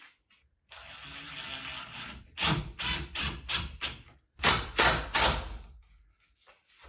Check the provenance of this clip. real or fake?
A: fake